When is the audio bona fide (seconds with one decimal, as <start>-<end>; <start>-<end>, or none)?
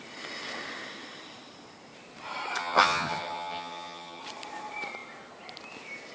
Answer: 0.0-2.6; 4.2-6.1